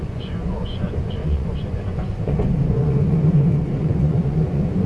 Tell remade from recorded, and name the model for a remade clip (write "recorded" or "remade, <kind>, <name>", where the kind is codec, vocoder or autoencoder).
remade, vocoder, Vocos